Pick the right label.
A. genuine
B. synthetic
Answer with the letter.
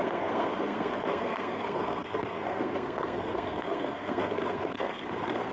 B